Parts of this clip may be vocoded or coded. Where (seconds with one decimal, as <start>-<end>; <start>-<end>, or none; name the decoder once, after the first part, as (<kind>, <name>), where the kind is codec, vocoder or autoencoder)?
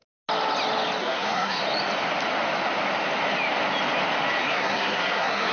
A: 1.0-1.6 (codec, SNAC); 4.4-5.5